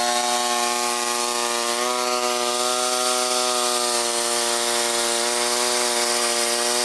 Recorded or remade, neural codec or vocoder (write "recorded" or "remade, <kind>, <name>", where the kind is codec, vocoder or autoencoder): recorded